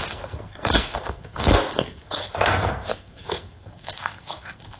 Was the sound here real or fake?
fake